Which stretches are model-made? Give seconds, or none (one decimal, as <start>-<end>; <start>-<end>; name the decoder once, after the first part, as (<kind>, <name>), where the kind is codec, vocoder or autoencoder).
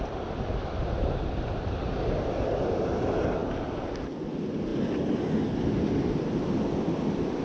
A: none